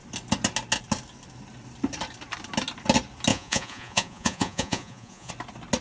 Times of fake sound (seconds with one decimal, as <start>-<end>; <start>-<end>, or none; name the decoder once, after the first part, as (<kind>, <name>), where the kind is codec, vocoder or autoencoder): 3.3-5.3 (vocoder, Vocos)